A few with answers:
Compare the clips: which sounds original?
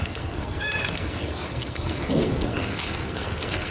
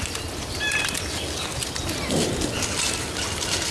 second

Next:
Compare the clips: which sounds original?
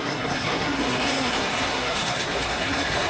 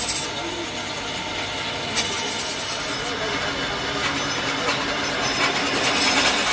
second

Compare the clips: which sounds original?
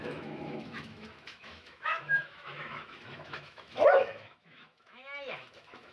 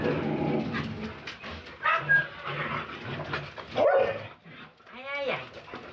second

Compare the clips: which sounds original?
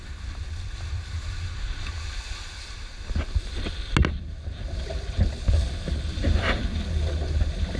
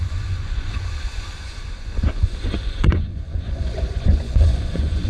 first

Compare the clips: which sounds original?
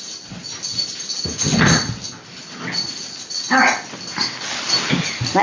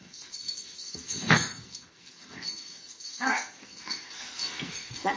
first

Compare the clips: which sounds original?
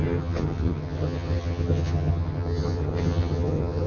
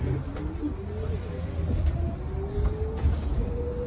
second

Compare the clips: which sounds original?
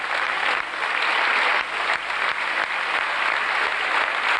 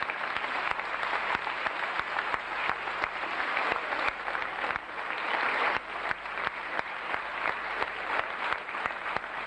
first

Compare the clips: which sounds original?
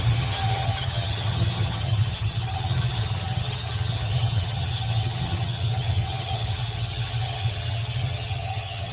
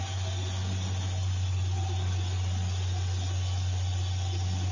second